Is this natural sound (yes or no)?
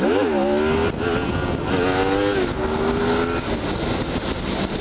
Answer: yes